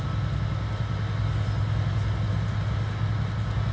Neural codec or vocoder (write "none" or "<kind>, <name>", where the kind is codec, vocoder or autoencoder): none